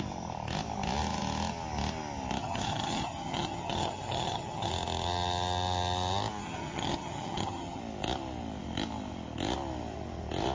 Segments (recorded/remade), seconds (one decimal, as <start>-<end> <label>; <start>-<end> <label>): 0.0-2.4 recorded; 2.4-4.7 remade; 4.7-6.4 recorded; 6.4-7.8 remade; 7.8-10.5 recorded